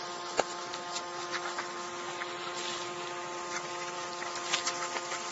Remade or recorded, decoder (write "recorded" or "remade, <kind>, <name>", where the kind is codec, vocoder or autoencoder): recorded